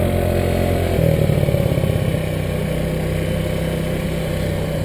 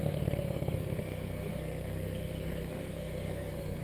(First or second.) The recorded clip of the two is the first